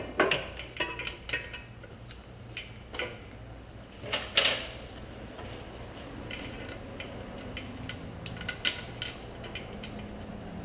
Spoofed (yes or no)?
no